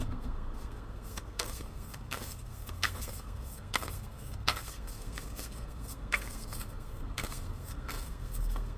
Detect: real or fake fake